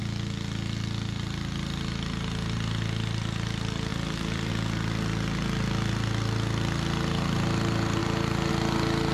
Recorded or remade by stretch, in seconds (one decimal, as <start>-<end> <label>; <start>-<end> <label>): 0.0-3.9 recorded; 3.9-4.5 remade; 4.5-8.0 recorded; 8.0-8.5 remade; 8.5-9.1 recorded